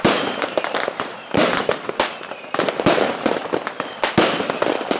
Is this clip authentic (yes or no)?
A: no